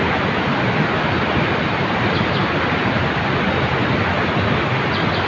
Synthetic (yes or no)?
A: no